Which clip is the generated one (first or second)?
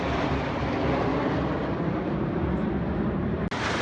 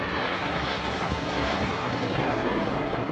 second